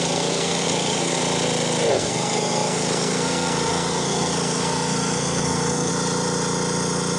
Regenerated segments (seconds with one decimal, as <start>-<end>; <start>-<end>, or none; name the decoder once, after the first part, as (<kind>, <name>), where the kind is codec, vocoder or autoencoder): 0.0-1.2 (codec, SNAC); 1.9-5.9